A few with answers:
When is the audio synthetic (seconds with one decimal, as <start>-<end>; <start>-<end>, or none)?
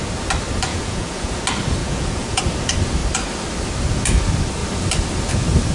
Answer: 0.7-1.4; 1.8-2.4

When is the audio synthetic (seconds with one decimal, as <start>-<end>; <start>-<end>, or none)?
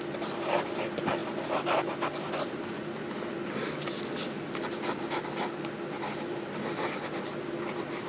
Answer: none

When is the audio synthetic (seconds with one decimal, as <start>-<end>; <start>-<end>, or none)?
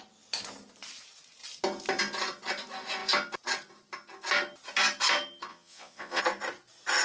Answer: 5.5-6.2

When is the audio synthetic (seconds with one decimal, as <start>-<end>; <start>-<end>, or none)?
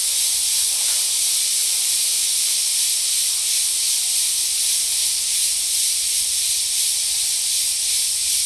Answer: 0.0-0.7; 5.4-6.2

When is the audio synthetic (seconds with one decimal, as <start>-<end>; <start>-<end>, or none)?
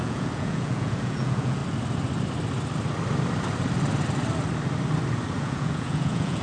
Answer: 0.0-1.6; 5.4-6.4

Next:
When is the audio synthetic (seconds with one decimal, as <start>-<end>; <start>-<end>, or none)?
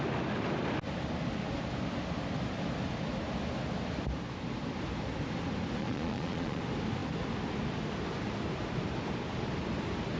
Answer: 5.8-6.6